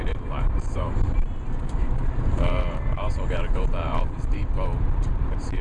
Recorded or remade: remade